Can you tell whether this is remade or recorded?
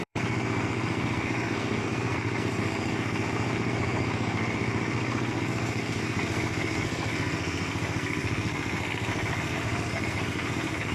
remade